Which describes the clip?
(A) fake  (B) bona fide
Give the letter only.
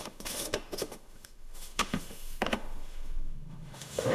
A